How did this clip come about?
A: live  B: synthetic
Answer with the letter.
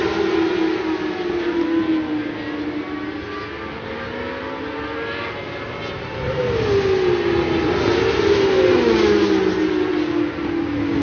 A